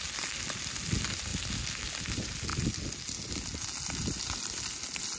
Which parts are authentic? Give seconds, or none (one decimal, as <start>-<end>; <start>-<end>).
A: 0.0-5.2